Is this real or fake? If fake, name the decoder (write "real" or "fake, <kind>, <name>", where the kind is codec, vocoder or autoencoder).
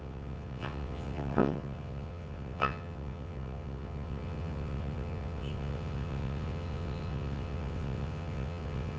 fake, vocoder, WaveNeXt